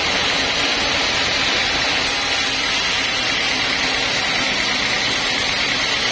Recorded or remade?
recorded